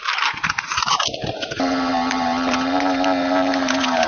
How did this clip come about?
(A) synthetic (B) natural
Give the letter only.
A